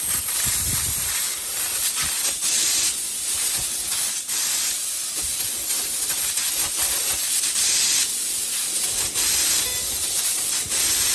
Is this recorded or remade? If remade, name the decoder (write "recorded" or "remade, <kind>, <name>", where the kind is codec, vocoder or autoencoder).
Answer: recorded